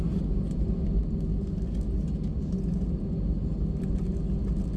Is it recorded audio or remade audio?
recorded